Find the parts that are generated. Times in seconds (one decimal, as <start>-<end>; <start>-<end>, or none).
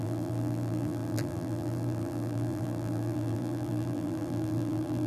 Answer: 0.0-5.1